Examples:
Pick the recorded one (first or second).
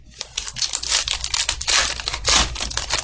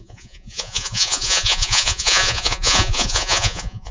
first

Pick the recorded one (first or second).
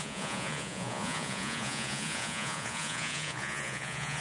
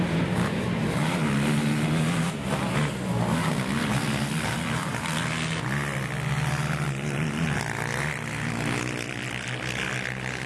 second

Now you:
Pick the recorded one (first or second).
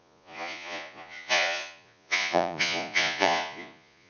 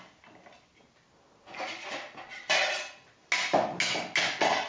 second